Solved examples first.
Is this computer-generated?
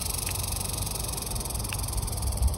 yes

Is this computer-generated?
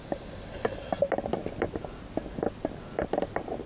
no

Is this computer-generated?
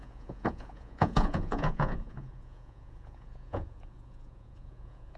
yes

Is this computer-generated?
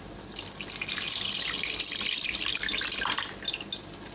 no